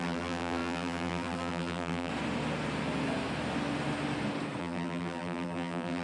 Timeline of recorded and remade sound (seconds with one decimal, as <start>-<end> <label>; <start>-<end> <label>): 0.0-2.1 remade; 2.1-4.6 recorded; 4.6-6.0 remade

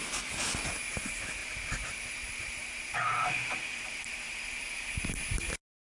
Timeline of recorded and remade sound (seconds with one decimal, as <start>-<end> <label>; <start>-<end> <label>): 0.0-1.4 recorded; 1.4-4.9 remade; 4.9-5.9 recorded

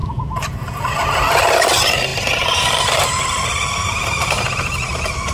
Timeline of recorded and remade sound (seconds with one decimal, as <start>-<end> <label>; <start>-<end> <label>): 0.0-5.3 remade

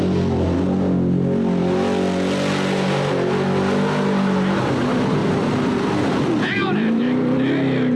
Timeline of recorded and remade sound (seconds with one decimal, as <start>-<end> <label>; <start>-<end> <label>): 0.0-5.2 recorded; 5.2-7.5 remade; 7.5-8.0 recorded

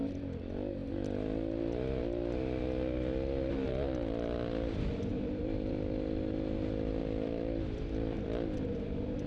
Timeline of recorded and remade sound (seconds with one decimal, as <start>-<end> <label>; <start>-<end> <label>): 0.0-5.1 recorded; 5.1-5.7 remade; 5.7-7.0 recorded; 7.0-8.2 remade; 8.2-9.3 recorded